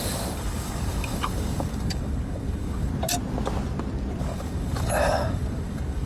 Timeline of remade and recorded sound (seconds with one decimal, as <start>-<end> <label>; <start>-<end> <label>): 0.0-2.9 remade; 2.9-4.2 recorded; 4.2-6.0 remade